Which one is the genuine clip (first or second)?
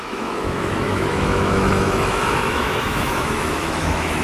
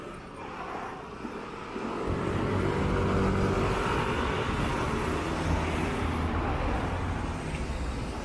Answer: second